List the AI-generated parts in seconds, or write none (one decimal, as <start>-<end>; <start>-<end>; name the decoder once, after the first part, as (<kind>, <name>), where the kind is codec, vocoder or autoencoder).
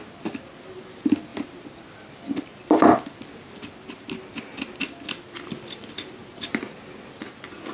none